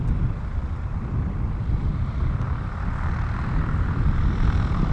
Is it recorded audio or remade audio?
recorded